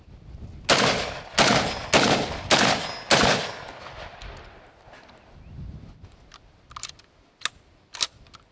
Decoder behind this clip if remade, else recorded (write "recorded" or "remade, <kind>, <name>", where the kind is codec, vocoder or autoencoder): recorded